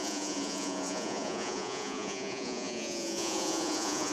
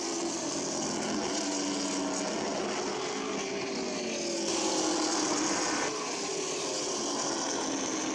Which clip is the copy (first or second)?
first